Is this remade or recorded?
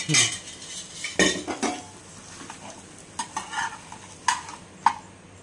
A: recorded